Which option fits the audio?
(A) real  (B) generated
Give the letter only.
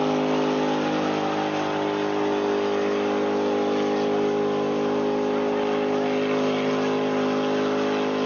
A